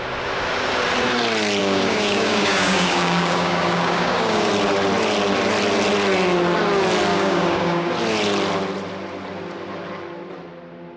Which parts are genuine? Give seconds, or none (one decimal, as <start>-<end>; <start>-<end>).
0.0-1.6; 4.5-7.1; 7.9-11.0